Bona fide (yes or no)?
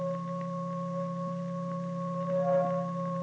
yes